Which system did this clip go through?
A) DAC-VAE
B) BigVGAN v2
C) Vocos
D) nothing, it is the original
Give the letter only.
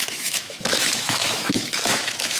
A